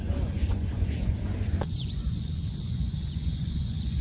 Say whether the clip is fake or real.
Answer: fake